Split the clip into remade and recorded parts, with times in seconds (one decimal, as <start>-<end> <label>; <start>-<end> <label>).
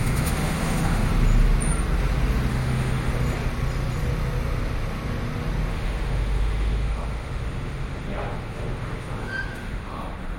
0.0-1.1 remade; 1.1-2.5 recorded; 2.5-3.1 remade; 3.1-5.7 recorded; 5.7-10.4 remade